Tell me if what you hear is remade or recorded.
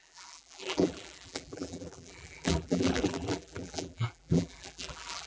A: remade